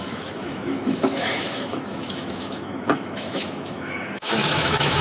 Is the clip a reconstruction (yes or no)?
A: yes